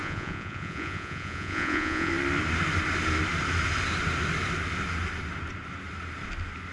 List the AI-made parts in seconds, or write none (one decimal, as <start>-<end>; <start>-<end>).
0.0-2.1